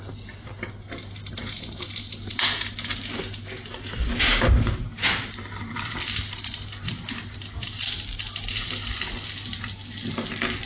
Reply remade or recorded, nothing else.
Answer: recorded